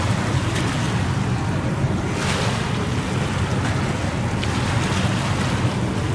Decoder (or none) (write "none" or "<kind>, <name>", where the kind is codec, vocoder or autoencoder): none